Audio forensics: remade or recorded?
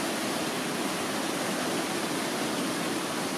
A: recorded